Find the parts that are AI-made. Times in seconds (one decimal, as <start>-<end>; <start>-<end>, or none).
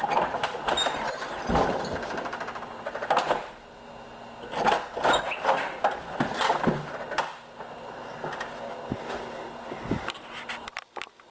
none